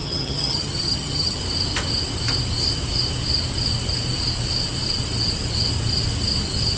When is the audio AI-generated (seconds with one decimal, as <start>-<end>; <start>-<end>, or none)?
0.0-1.4